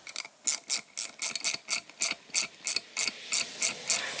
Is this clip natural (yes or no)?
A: yes